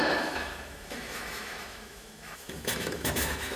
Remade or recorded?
remade